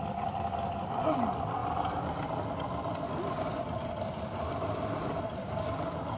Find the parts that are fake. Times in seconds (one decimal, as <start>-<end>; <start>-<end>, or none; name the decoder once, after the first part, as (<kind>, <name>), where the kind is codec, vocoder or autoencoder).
5.4-6.2 (codec, DAC)